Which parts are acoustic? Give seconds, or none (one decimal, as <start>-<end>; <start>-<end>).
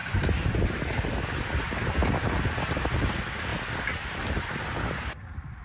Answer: 0.0-1.4; 2.0-2.8; 3.5-5.6